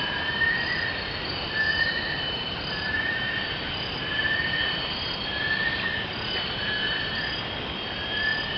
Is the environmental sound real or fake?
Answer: fake